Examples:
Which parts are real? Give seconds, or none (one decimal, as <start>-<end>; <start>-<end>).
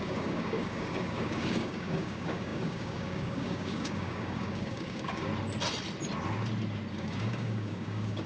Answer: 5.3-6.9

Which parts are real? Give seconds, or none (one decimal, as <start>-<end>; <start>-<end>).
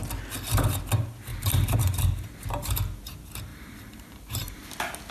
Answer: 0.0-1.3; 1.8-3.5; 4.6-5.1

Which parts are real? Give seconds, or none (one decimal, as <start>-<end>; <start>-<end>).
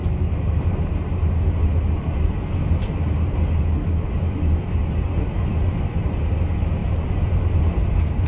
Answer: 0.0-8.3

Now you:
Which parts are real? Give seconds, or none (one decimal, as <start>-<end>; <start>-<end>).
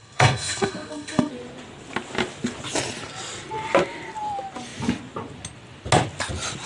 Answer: 1.3-6.7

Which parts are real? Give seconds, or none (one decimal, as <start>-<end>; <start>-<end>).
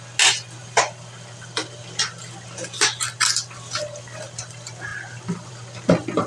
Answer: 0.0-0.6; 4.4-4.9; 5.5-6.3